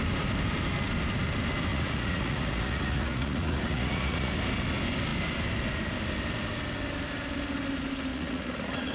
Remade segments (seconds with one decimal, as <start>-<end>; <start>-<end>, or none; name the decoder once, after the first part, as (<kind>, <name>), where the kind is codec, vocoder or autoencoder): 1.7-4.3 (vocoder, Vocos); 8.1-8.9

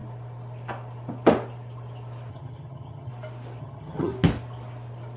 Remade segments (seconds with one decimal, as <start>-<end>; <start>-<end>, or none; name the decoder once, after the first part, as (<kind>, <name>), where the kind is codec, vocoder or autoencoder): 2.3-3.1 (vocoder, HiFi-GAN); 3.6-4.1

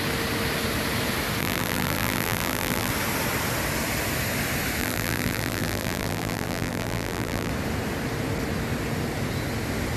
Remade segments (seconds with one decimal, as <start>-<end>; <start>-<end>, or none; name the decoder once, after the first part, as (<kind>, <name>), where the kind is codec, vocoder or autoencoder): 1.4-2.9 (vocoder, BigVGAN v2); 4.8-7.5

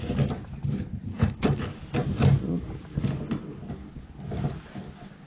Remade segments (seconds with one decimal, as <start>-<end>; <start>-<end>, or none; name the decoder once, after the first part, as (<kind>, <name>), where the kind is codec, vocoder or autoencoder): 1.1-1.6 (codec, HILCodec)

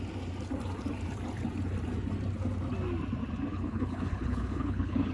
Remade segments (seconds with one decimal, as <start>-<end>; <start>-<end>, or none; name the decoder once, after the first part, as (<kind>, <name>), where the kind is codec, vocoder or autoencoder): 3.5-5.1 (codec, HILCodec)

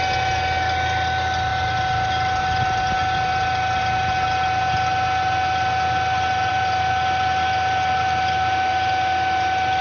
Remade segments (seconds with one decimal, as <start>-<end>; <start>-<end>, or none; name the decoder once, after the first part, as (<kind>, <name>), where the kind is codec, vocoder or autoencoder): none

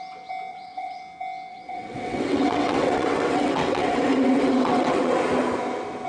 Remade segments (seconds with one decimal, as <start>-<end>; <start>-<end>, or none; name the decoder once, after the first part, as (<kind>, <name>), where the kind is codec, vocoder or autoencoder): 0.5-1.0 (vocoder, WaveNeXt); 1.5-5.2